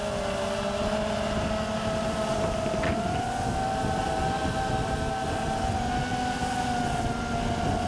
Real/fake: real